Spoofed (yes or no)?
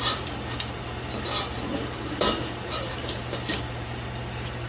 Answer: yes